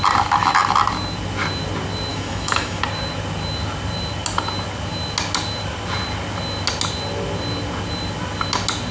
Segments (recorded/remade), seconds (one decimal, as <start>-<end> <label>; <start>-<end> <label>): 0.0-2.1 recorded; 2.1-2.8 remade; 2.8-8.9 recorded